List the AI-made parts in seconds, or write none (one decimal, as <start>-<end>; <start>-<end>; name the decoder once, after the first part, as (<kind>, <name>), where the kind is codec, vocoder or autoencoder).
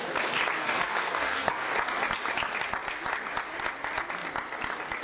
0.6-1.7 (codec, SNAC)